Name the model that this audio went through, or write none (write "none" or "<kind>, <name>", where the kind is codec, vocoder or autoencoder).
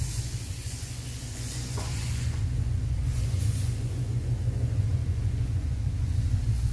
vocoder, Vocos